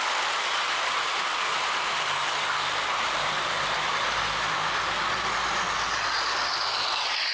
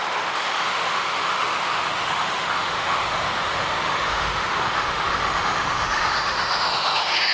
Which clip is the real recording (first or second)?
first